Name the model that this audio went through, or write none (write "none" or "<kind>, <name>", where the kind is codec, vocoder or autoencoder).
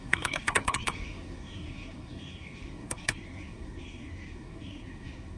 codec, SNAC